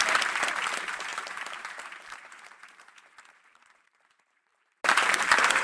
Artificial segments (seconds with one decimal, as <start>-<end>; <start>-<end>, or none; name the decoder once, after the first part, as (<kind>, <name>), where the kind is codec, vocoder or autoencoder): 1.1-4.5 (vocoder, BigVGAN v2)